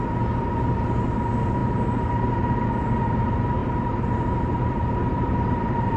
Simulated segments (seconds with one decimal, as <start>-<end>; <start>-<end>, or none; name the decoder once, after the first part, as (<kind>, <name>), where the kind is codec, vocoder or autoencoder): 3.6-6.0 (vocoder, BigVGAN v2)